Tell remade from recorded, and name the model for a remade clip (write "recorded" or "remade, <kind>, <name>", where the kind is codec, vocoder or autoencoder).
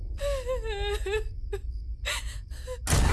recorded